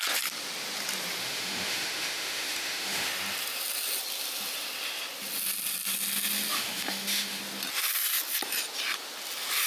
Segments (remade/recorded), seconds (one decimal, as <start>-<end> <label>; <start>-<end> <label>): 0.0-1.2 recorded; 1.2-3.1 remade; 3.1-6.5 recorded; 6.5-7.4 remade; 7.4-9.7 recorded